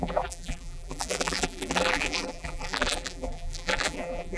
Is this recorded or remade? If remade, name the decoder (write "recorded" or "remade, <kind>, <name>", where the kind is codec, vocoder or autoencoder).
remade, vocoder, BigVGAN v2